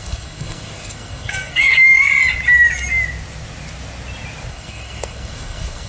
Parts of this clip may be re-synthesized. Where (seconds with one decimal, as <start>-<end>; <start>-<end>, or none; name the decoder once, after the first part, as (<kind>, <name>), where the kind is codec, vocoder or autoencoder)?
0.0-2.1 (codec, SNAC); 4.5-5.9